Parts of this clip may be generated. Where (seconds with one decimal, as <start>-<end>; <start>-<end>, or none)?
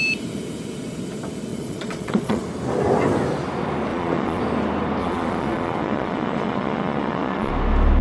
1.5-2.4; 3.9-4.4; 5.0-7.5